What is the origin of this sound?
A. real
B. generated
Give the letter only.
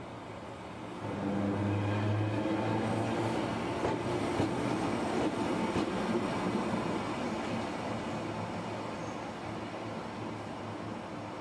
A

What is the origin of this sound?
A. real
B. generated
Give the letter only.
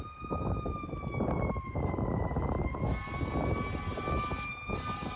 A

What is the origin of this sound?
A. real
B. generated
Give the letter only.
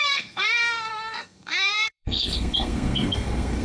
B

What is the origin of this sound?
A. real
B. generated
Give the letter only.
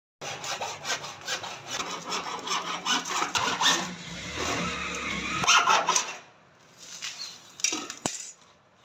A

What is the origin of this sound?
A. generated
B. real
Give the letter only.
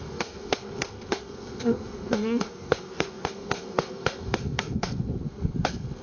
A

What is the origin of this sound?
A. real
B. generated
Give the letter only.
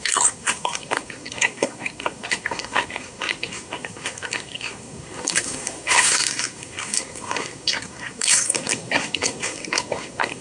B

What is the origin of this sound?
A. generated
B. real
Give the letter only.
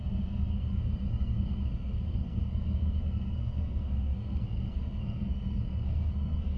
A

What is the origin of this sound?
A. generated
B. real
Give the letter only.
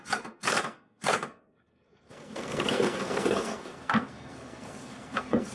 A